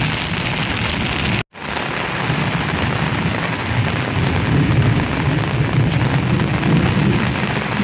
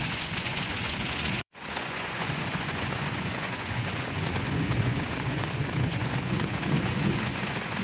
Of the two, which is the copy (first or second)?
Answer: second